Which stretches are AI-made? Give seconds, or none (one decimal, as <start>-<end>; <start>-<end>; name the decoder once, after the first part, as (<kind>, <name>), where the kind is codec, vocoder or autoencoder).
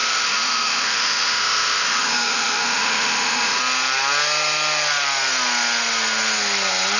0.0-3.6 (autoencoder, DAC-VAE)